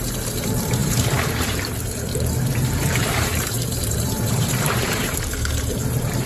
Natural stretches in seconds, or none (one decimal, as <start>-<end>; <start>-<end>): none